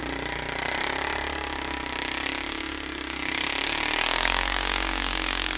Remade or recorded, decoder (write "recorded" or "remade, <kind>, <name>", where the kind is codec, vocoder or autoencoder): remade, codec, DAC